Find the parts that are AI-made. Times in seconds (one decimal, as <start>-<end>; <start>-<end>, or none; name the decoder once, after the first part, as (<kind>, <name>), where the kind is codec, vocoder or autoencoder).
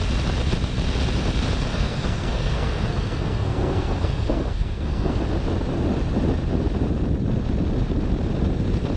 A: 1.7-5.2 (codec, SNAC)